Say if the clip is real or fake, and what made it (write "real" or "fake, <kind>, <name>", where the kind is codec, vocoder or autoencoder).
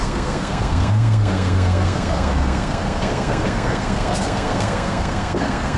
fake, codec, SNAC